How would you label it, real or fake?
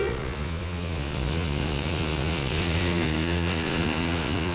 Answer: fake